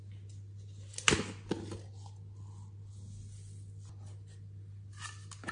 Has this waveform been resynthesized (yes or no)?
no